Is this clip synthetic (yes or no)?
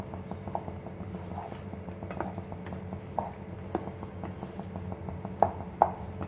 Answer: no